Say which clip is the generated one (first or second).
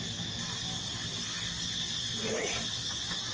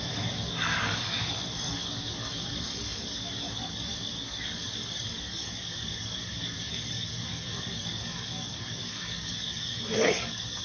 second